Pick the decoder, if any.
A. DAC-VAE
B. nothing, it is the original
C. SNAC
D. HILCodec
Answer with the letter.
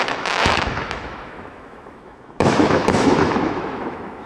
A